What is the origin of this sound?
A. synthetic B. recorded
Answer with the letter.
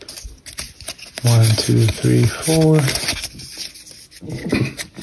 B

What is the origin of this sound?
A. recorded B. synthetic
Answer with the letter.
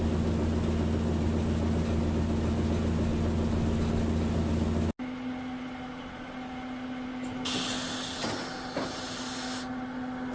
A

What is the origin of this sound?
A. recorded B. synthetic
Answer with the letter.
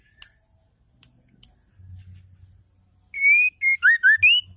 A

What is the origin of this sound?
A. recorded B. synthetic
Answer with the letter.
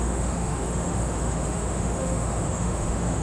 B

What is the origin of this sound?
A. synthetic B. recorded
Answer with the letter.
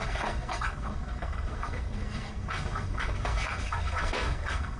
A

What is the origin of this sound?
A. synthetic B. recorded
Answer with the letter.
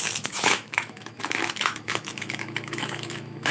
A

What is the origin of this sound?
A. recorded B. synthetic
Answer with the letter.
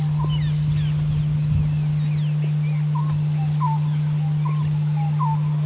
A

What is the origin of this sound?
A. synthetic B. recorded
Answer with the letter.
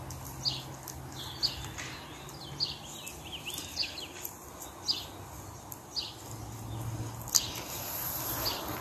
B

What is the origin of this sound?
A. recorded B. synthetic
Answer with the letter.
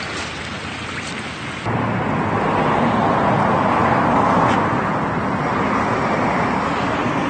A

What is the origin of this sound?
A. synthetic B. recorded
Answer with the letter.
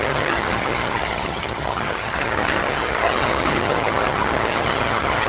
A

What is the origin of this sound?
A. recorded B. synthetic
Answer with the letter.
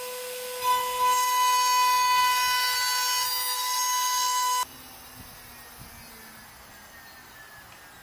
A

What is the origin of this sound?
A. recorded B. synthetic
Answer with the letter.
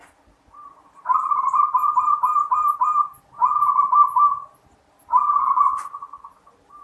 A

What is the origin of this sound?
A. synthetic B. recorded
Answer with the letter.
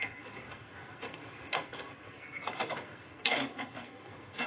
A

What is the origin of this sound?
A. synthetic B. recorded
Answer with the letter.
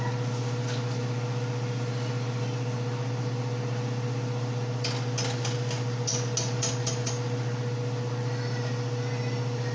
B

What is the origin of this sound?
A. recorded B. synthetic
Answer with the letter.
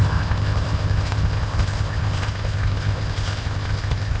B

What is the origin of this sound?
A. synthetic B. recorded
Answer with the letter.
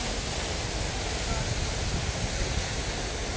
B